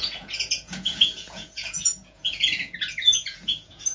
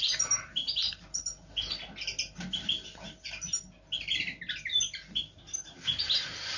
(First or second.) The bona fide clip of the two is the second